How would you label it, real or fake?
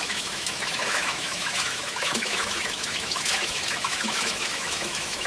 fake